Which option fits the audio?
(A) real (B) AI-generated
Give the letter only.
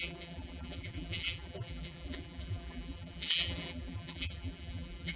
B